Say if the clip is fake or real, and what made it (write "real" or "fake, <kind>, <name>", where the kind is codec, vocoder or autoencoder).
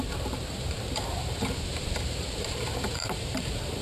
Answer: fake, vocoder, BigVGAN v2